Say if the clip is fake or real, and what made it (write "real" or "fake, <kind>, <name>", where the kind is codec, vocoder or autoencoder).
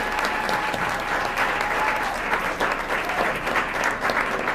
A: real